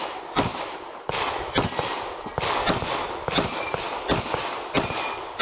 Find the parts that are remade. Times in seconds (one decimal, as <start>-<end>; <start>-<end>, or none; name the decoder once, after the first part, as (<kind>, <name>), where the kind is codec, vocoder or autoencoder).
none